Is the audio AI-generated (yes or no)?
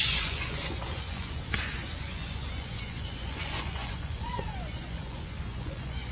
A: yes